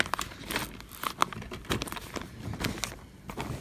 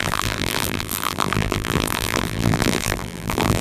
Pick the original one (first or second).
first